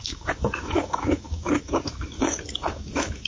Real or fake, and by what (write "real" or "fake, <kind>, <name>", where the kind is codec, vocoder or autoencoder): fake, autoencoder, DAC-VAE